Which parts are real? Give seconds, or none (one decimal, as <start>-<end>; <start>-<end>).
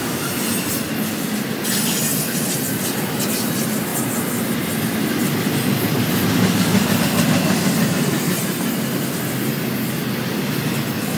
0.0-11.2